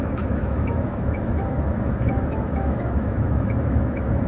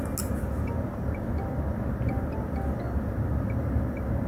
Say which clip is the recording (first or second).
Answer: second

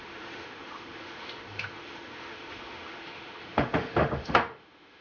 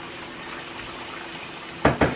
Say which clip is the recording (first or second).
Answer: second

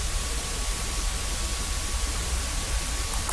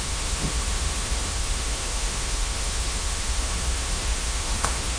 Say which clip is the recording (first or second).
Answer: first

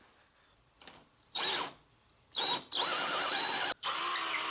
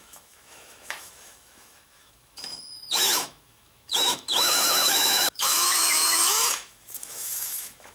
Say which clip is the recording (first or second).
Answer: first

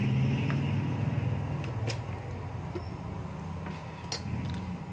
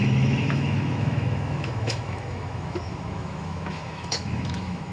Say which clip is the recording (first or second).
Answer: first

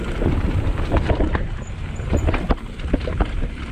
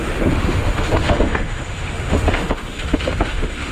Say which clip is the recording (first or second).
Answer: first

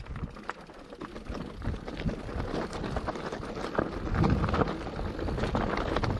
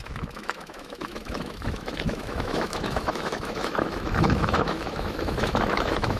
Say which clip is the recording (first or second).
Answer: first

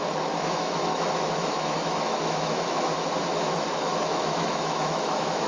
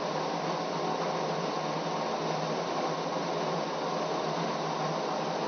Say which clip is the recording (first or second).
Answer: second